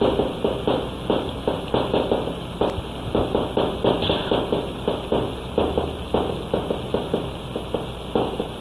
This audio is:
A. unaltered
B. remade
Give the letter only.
A